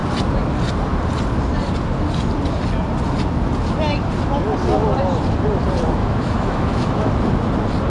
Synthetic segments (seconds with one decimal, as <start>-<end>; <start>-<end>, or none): 6.0-7.1